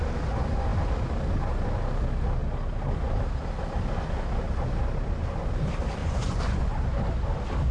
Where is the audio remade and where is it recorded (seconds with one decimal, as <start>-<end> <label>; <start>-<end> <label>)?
0.0-6.0 recorded; 6.0-6.8 remade; 6.8-7.7 recorded